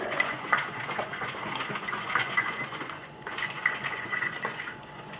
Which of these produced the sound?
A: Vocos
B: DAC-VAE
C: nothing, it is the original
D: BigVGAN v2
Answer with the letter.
A